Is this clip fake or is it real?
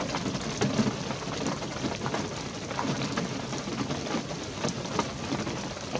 real